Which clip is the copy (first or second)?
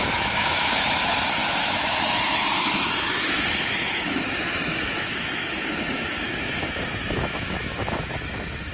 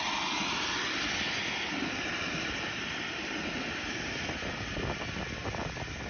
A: first